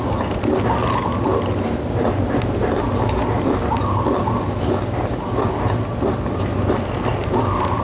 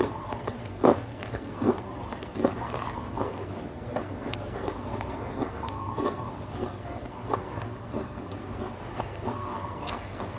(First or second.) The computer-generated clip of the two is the second